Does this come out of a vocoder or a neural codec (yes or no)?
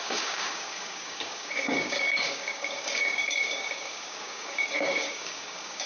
yes